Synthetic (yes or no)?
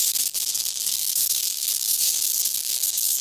yes